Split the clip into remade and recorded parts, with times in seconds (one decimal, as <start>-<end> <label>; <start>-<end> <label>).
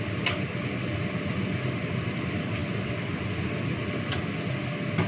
0.0-2.6 recorded; 2.6-3.2 remade; 3.2-5.1 recorded